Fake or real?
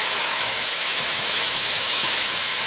fake